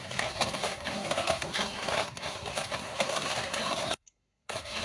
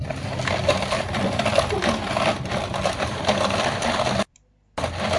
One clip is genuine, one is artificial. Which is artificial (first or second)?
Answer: first